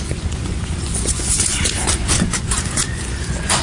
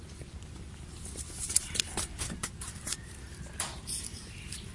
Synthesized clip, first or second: first